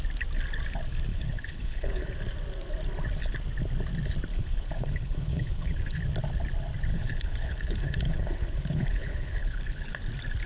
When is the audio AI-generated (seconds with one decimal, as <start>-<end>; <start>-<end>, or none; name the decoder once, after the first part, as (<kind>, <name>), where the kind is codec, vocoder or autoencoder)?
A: 1.1-2.1 (codec, HILCodec); 4.3-6.0; 6.9-9.9